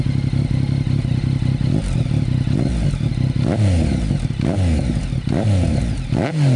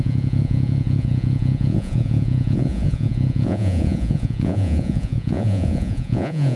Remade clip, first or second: second